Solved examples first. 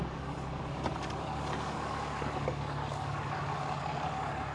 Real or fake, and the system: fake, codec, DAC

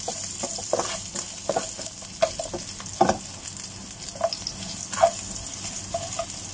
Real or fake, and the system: real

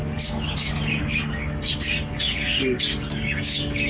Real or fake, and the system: fake, codec, DAC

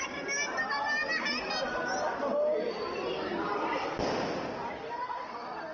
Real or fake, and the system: real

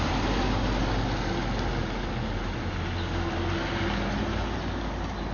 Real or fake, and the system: real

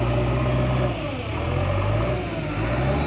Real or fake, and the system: real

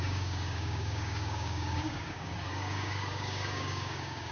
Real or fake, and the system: fake, codec, DAC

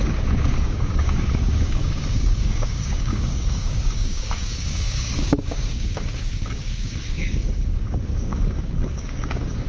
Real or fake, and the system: fake, codec, DAC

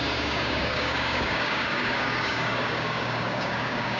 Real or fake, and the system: fake, codec, DAC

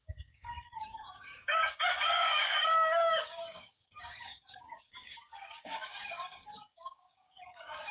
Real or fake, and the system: fake, codec, DAC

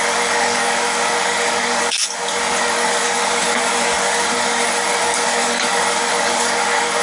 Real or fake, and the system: fake, codec, DAC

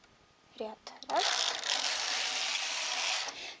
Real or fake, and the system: real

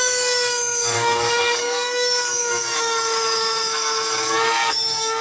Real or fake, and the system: fake, codec, DAC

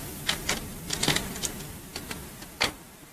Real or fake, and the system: real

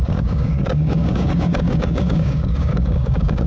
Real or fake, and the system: fake, codec, DAC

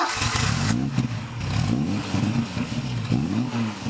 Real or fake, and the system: fake, codec, DAC